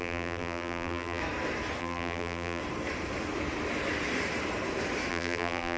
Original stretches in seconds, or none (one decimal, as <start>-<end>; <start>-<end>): 1.2-1.8; 2.6-5.1